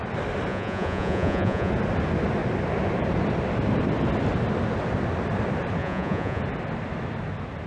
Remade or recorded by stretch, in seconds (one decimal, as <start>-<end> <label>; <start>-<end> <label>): 0.0-0.5 recorded; 0.5-1.7 remade; 1.7-5.8 recorded; 5.8-6.4 remade; 6.4-7.7 recorded